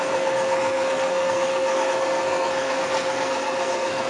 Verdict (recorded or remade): remade